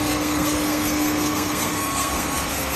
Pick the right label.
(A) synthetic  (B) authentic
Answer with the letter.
A